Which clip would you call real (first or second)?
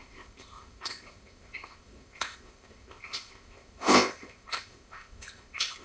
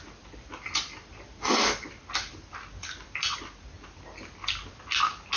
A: second